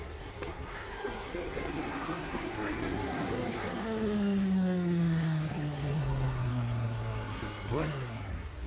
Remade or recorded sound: remade